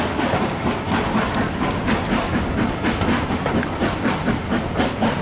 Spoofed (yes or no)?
no